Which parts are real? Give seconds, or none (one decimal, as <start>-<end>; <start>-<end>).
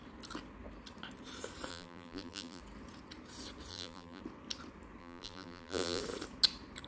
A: 0.0-1.7; 2.6-3.7; 4.2-5.0; 6.0-6.9